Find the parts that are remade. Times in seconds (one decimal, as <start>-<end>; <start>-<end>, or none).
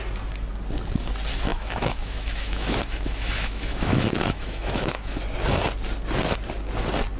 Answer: 1.5-5.2